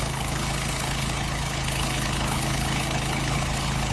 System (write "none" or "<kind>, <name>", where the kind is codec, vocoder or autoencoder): codec, HILCodec